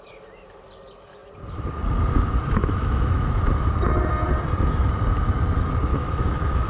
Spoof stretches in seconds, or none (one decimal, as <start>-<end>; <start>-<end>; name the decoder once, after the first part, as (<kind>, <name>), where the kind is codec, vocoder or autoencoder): 2.6-3.4 (autoencoder, DAC-VAE); 5.9-6.7